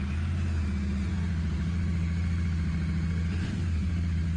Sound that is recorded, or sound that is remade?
recorded